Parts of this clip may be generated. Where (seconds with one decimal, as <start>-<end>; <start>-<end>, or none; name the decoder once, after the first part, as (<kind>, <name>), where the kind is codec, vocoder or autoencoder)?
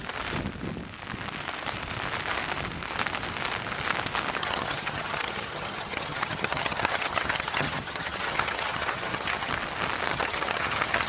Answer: 4.4-9.5 (vocoder, HiFi-GAN); 10.1-11.1